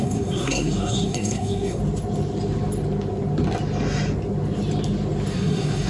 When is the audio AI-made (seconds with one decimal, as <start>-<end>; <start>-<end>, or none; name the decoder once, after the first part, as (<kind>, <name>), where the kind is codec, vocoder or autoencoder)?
0.0-1.8 (codec, SNAC); 5.3-5.9

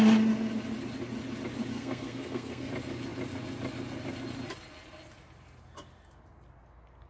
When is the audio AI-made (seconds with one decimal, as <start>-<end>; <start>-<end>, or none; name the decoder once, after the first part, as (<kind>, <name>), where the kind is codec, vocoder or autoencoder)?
1.7-2.7 (codec, SNAC)

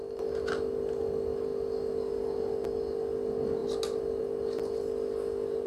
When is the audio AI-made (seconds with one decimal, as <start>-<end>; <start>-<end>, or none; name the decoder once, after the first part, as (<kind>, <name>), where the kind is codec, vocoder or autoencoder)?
none

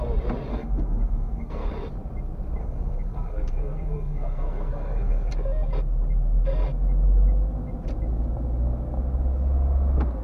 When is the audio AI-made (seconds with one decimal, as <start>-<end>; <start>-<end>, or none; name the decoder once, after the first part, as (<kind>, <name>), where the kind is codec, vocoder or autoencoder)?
0.5-1.7 (codec, SNAC); 2.6-5.3

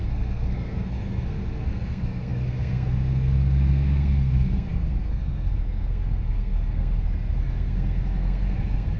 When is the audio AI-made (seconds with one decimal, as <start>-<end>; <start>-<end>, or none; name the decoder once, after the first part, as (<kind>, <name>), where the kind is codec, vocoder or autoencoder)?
0.0-9.0 (codec, SNAC)

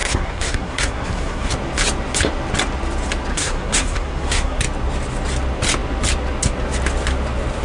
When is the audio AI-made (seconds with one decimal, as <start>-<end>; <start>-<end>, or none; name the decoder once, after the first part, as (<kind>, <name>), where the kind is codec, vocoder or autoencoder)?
0.0-1.5 (codec, SNAC); 3.3-4.6

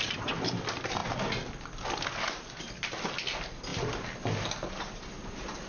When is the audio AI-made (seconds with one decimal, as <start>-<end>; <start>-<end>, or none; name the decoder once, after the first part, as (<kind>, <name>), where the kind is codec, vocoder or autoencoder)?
none

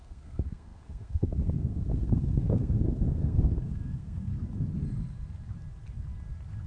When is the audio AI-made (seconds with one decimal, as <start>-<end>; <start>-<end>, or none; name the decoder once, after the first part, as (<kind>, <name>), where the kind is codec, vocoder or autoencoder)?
0.0-4.3 (codec, SNAC)